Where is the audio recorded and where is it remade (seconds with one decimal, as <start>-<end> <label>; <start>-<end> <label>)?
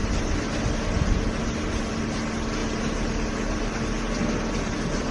0.0-5.1 recorded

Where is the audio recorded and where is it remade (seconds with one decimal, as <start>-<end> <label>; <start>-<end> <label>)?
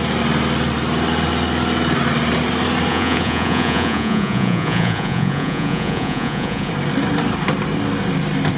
0.0-2.9 recorded; 2.9-6.7 remade; 6.7-8.6 recorded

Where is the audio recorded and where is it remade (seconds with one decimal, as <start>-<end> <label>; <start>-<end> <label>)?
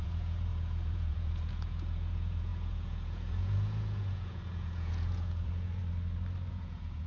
0.0-5.8 remade; 5.8-6.5 recorded; 6.5-7.1 remade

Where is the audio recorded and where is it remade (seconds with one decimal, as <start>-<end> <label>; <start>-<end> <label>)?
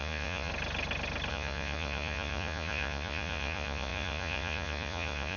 0.0-0.5 remade; 0.5-1.3 recorded; 1.3-5.4 remade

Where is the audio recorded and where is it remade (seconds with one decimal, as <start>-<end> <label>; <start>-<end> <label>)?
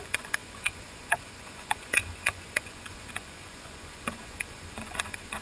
0.0-5.4 remade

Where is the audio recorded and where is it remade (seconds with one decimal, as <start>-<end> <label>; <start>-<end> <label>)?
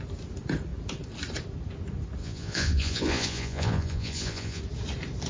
0.0-2.2 recorded; 2.2-4.6 remade; 4.6-5.3 recorded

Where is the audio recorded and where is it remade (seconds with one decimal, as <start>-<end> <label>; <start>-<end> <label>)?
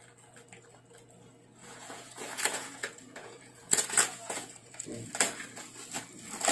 0.0-1.6 recorded; 1.6-4.8 remade; 4.8-6.5 recorded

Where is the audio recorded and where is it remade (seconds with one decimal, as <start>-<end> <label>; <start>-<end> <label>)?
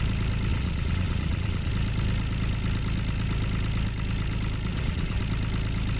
0.0-0.5 recorded; 0.5-1.7 remade; 1.7-4.7 recorded; 4.7-5.2 remade; 5.2-6.0 recorded